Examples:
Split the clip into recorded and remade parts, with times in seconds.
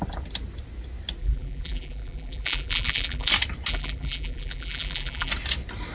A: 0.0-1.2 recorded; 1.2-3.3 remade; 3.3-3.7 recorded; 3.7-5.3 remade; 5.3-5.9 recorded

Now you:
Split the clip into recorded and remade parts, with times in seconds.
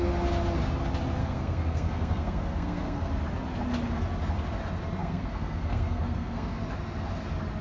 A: 0.0-1.2 recorded; 1.2-3.1 remade; 3.1-5.0 recorded; 5.0-6.5 remade; 6.5-7.6 recorded